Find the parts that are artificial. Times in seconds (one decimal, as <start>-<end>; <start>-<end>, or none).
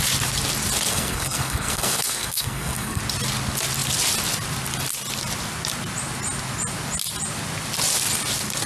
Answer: 0.9-3.0